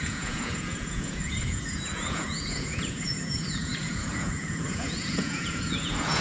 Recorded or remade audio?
remade